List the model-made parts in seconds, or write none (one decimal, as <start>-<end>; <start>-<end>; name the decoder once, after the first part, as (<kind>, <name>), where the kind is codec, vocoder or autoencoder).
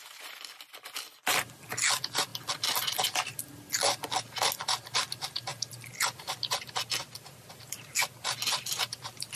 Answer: none